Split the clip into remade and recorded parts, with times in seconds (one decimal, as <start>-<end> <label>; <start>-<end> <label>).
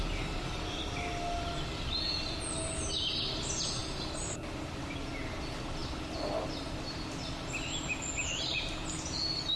0.0-9.6 recorded